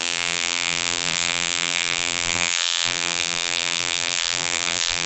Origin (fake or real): fake